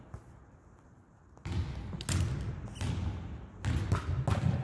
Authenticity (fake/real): real